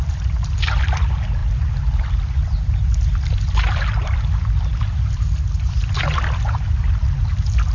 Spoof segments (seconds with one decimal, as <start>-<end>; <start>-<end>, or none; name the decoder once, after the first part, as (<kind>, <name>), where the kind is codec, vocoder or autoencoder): none